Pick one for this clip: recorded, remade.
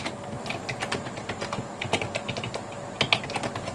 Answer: recorded